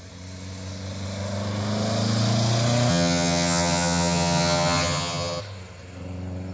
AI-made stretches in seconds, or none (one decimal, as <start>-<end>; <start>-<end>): 2.9-5.4